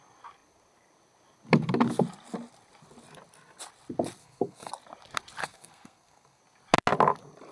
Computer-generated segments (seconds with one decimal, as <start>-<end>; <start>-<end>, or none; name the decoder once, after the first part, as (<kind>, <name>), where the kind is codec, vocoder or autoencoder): 4.2-4.7 (codec, SNAC); 5.4-6.4